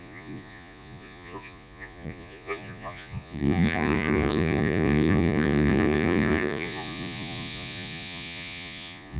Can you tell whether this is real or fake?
fake